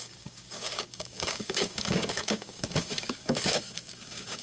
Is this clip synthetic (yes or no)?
yes